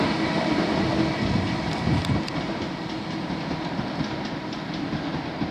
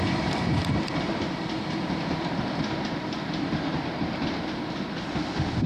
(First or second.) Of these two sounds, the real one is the first